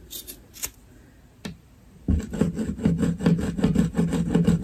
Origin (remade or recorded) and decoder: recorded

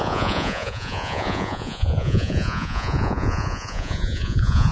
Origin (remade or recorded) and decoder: remade, vocoder, Vocos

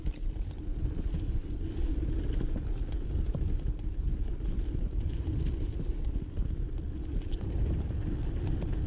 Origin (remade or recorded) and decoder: recorded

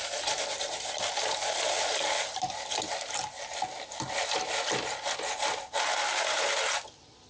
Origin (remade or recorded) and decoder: recorded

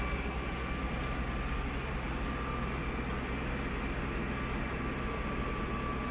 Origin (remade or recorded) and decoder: recorded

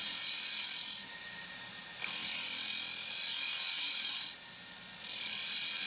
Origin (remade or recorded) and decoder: recorded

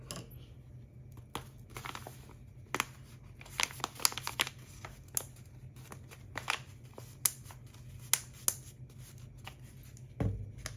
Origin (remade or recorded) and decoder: recorded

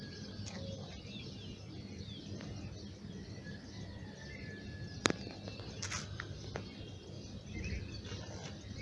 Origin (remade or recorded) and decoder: recorded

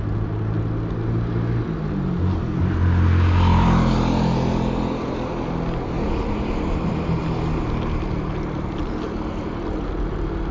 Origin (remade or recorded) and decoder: recorded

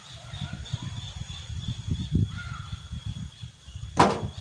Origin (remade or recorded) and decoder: recorded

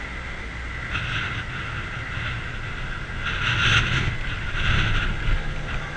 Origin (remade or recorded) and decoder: recorded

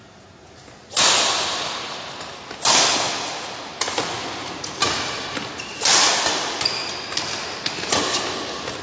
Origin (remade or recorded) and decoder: recorded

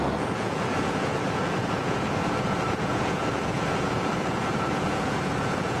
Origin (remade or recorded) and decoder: remade, vocoder, Vocos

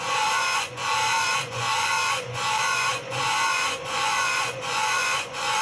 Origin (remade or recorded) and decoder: remade, vocoder, Vocos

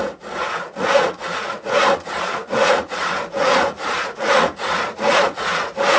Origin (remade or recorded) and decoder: remade, vocoder, Vocos